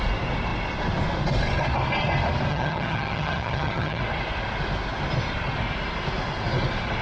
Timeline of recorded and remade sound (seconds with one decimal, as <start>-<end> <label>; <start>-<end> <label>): 0.0-2.5 recorded; 2.5-4.0 remade; 4.0-7.0 recorded